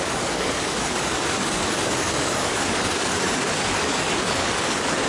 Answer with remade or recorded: remade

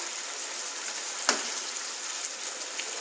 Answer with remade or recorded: recorded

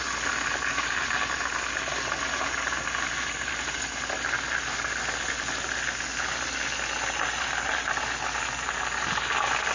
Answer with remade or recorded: recorded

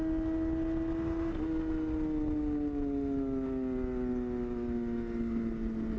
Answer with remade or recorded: recorded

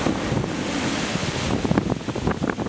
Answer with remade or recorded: recorded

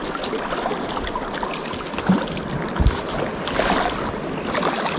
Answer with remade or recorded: recorded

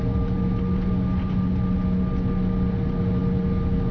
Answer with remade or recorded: recorded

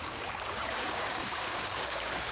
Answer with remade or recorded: remade